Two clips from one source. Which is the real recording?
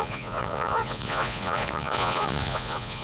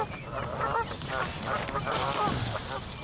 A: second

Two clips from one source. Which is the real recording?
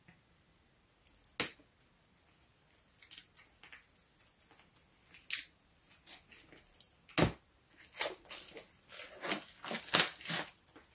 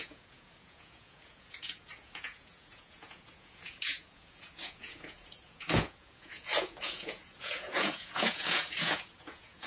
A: first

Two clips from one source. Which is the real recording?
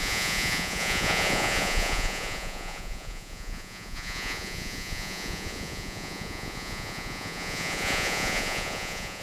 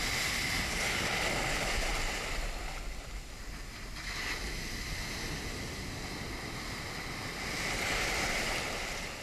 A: second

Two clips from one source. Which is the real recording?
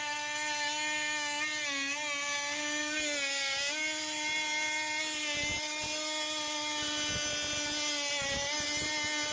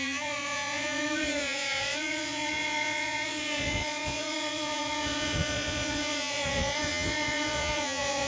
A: first